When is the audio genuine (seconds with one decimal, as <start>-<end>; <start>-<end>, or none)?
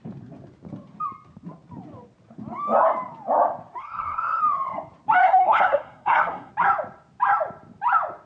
0.0-3.8; 4.4-5.2; 6.5-8.3